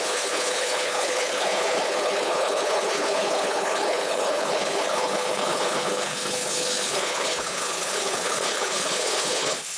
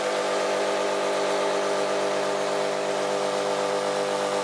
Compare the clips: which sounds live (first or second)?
second